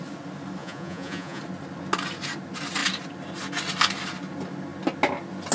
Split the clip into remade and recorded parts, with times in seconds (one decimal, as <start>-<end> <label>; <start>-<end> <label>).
0.0-0.6 recorded; 0.6-1.4 remade; 1.4-5.5 recorded